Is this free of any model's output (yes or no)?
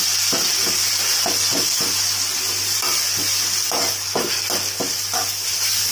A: yes